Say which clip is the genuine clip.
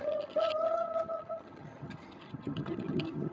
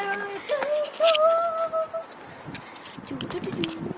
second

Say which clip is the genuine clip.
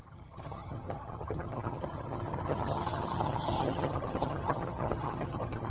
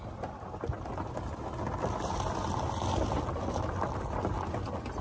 second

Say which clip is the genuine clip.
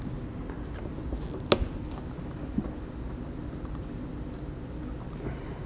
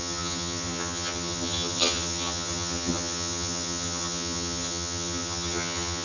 first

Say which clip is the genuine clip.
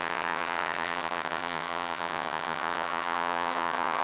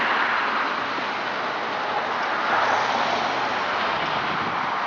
second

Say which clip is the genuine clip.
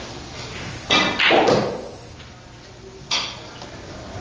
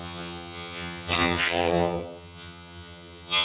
first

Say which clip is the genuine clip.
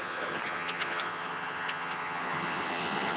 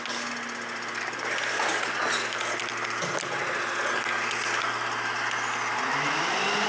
second